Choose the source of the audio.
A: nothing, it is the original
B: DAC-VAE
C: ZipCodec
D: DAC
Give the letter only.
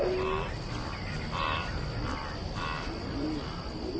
A